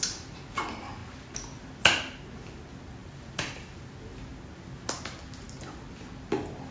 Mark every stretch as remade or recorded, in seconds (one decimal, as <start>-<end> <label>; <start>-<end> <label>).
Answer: 0.0-6.7 recorded